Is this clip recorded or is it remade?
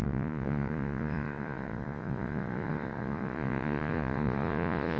remade